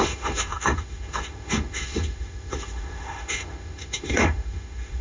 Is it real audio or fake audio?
fake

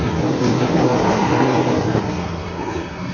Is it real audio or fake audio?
fake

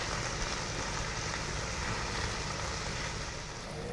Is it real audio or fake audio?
real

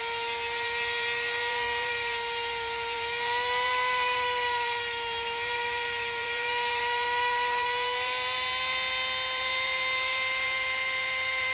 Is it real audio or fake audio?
fake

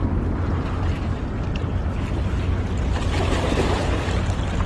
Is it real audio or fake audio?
real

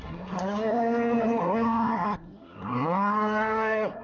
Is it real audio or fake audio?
fake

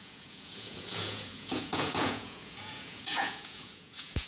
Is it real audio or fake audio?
fake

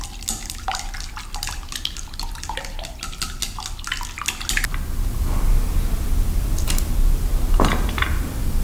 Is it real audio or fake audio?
real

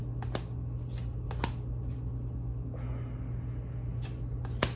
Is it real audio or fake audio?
real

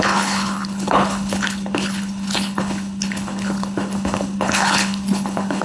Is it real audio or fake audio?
fake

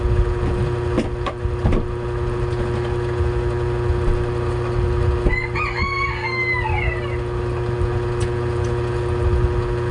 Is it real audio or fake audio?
real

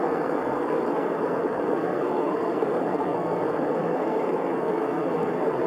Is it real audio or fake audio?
fake